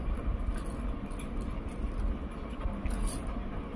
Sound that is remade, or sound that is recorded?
recorded